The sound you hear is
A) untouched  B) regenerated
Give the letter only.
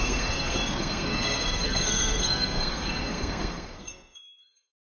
B